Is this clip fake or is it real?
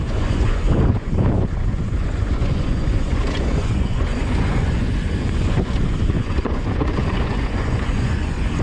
fake